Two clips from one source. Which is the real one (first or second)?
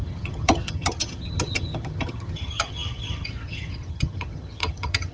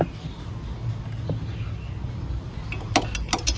second